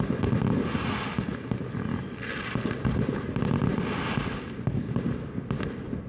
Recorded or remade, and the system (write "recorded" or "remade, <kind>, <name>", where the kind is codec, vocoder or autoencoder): recorded